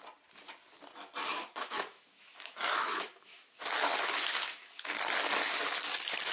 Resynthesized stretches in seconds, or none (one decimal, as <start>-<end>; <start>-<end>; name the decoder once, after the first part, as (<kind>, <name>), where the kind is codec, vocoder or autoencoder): 1.3-3.7 (autoencoder, DAC-VAE); 4.4-5.0